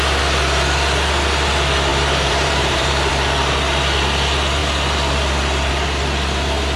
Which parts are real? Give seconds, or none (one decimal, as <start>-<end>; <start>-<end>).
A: 0.0-1.9; 3.1-6.8